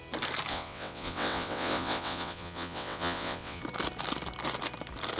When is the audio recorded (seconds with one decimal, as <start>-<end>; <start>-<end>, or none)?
0.0-0.5; 3.6-5.2